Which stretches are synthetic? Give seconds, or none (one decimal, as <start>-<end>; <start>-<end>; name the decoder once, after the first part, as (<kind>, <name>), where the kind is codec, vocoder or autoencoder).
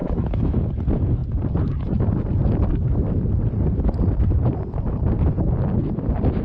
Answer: 0.0-0.6 (autoencoder, DAC-VAE)